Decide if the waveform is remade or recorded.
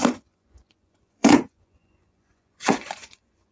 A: remade